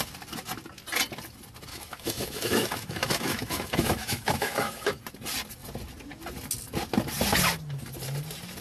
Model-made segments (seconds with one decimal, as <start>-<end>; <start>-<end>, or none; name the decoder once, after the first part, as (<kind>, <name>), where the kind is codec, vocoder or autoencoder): 1.7-5.0 (autoencoder, DAC-VAE)